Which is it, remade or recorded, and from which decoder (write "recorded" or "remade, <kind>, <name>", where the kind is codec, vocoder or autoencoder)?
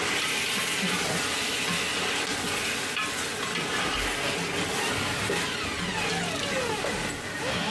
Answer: recorded